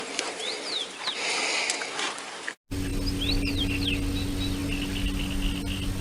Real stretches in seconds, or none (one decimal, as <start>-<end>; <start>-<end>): 0.0-6.0